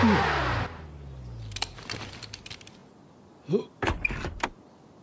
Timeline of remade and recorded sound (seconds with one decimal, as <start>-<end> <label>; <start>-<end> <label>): 0.0-5.0 recorded